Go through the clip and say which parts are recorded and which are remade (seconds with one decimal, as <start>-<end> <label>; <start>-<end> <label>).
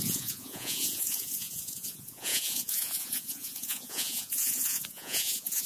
0.0-5.7 remade